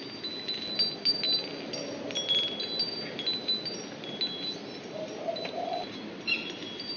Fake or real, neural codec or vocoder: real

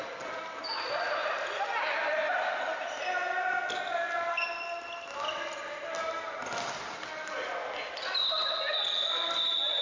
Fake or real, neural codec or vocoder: real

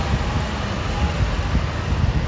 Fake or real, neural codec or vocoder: real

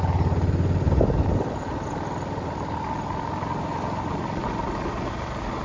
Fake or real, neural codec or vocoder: real